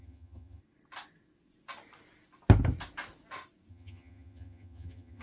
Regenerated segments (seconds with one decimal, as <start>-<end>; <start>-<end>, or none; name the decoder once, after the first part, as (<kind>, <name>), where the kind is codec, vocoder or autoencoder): 0.0-0.6 (vocoder, HiFi-GAN); 3.7-5.2